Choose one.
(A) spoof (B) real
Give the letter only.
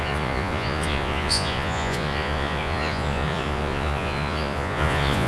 A